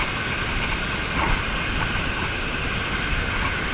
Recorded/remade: recorded